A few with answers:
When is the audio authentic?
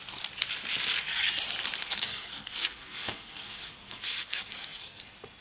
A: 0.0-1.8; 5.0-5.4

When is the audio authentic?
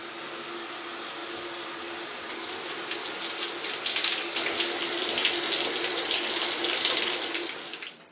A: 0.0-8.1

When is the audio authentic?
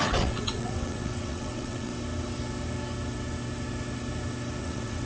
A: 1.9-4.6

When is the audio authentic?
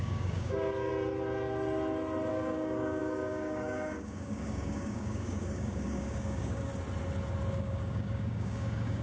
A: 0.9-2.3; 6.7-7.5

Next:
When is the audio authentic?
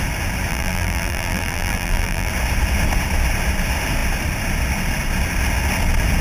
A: 0.0-0.5; 2.3-6.2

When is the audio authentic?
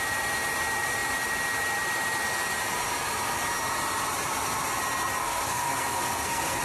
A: 0.0-5.2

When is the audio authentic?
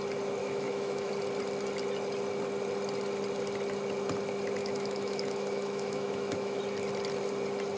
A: 0.0-0.4; 1.1-4.6; 6.6-7.8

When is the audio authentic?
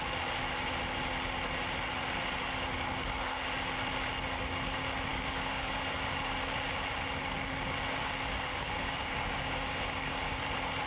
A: 0.0-5.1; 5.7-8.5; 10.4-10.9